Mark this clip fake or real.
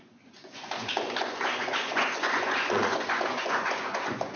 fake